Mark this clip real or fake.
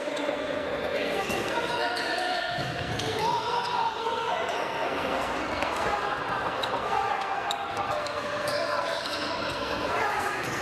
fake